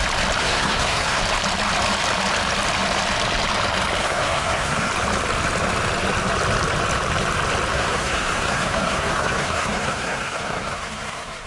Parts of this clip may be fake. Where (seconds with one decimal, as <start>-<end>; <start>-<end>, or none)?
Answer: 0.4-1.2; 4.0-4.9; 7.7-11.5